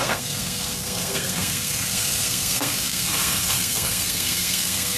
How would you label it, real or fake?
fake